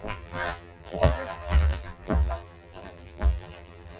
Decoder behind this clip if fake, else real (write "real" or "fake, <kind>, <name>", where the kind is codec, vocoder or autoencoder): fake, vocoder, BigVGAN v2